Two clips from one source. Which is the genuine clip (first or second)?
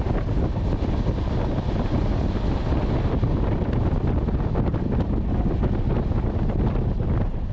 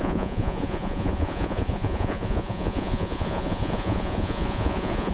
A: first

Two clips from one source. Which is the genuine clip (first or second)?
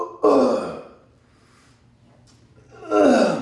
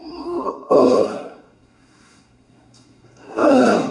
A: first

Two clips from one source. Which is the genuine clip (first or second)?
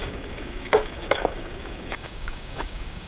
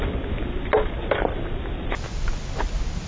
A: second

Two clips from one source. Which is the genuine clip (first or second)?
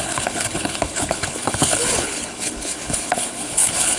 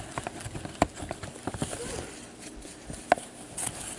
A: second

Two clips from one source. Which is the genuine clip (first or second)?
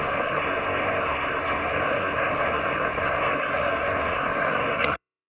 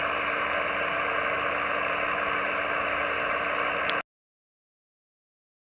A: second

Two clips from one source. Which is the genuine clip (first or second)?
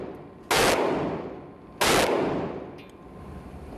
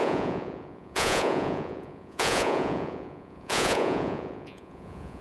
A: first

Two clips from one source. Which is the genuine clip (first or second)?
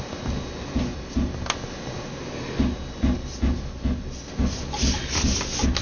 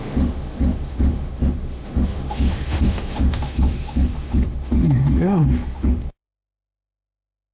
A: first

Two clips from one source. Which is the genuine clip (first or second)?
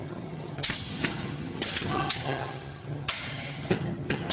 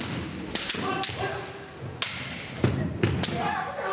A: second